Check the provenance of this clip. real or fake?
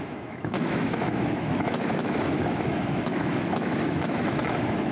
fake